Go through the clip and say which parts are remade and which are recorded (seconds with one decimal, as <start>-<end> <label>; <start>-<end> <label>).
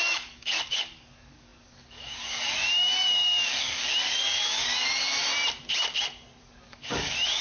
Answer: 0.0-5.2 remade; 5.2-6.4 recorded; 6.4-7.4 remade